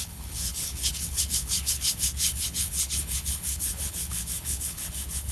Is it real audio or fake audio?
fake